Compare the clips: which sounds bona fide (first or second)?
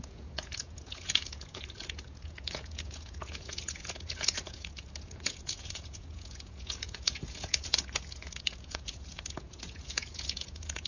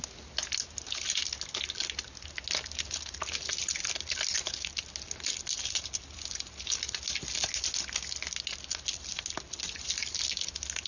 second